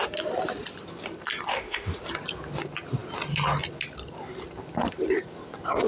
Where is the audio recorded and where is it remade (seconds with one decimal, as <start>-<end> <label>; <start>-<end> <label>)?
0.0-1.5 recorded; 1.5-2.0 remade; 2.0-5.9 recorded